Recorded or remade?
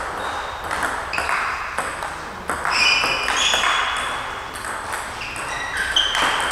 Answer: recorded